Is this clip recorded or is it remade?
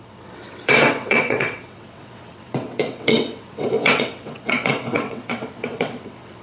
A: remade